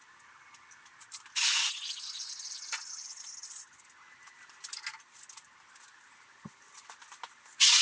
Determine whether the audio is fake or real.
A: real